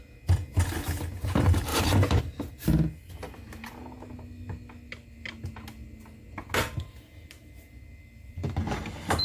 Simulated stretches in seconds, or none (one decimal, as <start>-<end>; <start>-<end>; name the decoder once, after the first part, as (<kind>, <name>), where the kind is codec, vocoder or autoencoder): 1.7-2.2 (vocoder, BigVGAN v2)